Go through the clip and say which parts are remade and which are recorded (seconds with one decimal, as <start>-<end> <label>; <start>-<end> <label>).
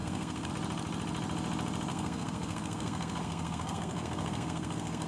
0.0-0.5 remade; 0.5-1.9 recorded; 1.9-5.1 remade